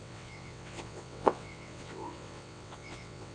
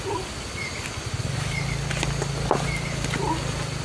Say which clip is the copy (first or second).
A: first